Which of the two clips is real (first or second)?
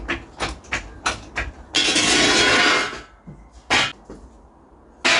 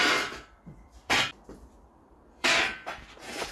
first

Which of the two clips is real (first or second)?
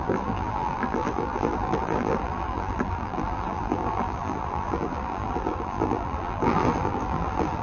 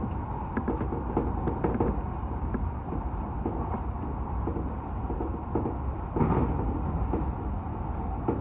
second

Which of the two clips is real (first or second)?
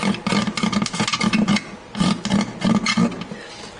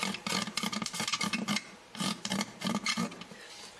first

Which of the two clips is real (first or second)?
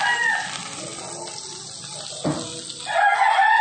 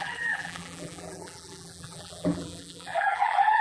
first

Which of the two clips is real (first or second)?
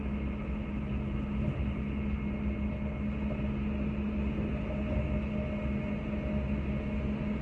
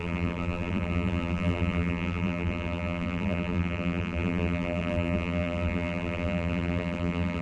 first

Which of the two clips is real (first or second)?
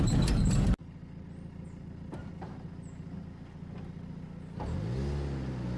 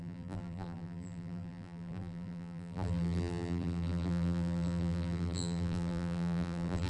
first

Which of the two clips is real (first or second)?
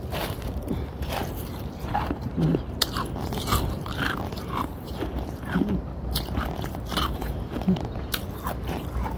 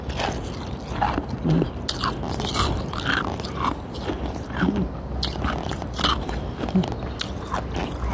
second